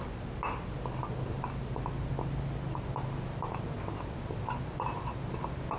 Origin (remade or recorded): recorded